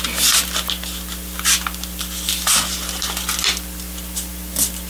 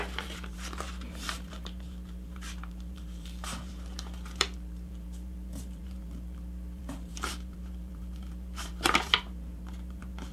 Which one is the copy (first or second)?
second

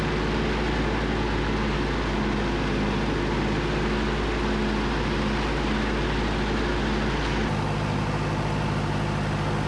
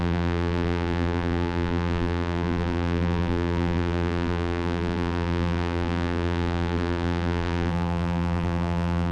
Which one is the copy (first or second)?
second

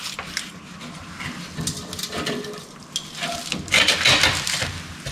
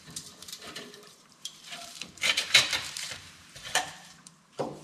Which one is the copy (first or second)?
second